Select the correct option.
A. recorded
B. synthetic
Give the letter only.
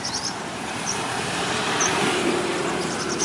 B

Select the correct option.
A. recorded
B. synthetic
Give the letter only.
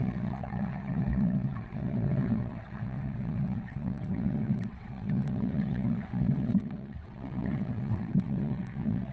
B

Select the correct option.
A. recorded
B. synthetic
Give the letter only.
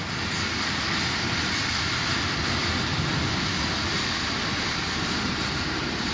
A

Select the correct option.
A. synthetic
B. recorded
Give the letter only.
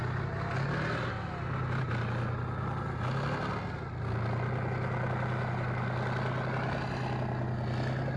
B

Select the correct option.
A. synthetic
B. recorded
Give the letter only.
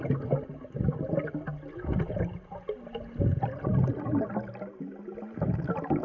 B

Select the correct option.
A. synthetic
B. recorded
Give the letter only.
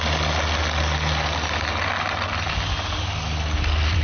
B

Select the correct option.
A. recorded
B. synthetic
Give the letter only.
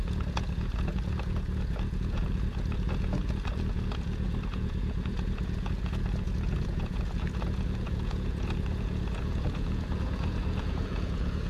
B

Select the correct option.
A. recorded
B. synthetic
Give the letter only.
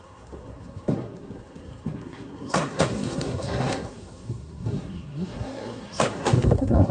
B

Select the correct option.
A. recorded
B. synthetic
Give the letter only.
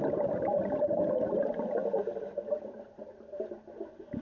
A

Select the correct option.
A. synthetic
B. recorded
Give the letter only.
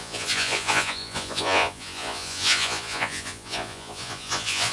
A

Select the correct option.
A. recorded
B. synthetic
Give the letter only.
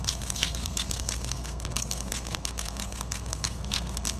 B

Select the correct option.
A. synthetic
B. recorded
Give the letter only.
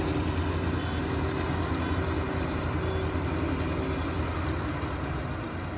B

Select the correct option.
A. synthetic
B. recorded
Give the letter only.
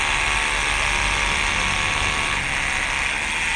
B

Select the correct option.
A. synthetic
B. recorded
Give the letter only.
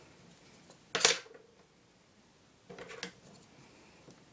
B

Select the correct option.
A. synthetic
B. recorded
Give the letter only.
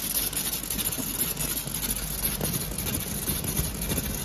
B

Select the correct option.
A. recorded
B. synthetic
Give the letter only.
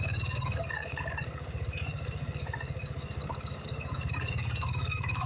B